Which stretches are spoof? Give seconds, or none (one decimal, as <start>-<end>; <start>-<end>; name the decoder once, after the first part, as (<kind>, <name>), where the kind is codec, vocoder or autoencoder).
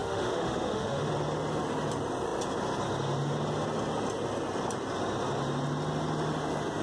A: 0.0-1.1 (autoencoder, DAC-VAE)